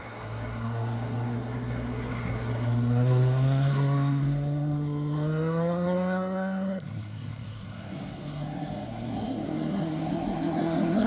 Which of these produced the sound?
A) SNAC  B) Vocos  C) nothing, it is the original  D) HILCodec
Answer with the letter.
A